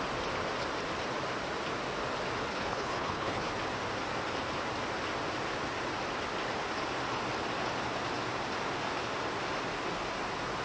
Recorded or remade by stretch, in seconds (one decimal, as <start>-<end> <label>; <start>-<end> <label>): 0.0-2.5 recorded; 2.5-3.5 remade; 3.5-10.6 recorded

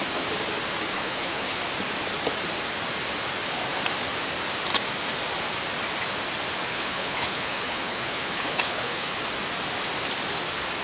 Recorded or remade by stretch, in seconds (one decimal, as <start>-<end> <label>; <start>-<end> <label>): 0.0-0.9 recorded; 0.9-1.6 remade; 1.6-6.7 recorded; 6.7-9.2 remade; 9.2-10.8 recorded

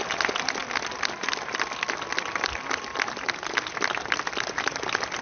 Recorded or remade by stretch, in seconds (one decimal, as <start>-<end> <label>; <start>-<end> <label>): 0.0-5.2 recorded

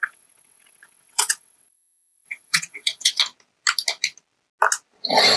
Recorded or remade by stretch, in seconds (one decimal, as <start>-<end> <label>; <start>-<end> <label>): 0.0-3.2 remade; 3.2-5.4 recorded

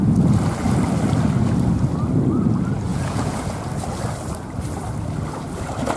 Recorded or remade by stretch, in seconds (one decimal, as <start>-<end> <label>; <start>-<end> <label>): 0.0-2.9 recorded; 2.9-3.7 remade; 3.7-6.0 recorded

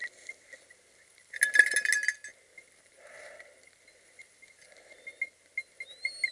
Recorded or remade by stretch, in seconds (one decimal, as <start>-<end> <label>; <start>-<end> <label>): 0.0-6.3 recorded

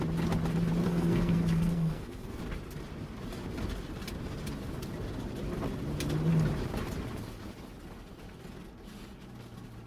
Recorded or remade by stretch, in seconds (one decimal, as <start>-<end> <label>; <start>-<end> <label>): 0.0-0.8 recorded; 0.8-2.4 remade; 2.4-9.9 recorded

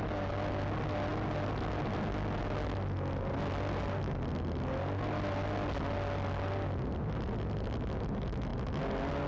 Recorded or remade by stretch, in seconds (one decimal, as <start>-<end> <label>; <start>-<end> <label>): 0.0-9.3 recorded